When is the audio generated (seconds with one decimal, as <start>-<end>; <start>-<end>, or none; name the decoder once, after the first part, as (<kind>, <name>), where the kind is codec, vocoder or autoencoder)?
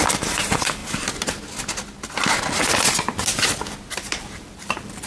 0.0-0.8 (vocoder, BigVGAN v2); 3.9-5.1